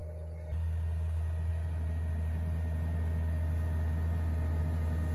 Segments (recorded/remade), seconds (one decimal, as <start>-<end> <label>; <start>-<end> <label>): 0.0-5.1 recorded